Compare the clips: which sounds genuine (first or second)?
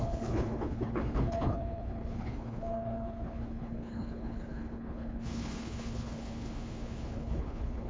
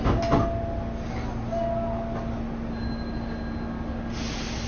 second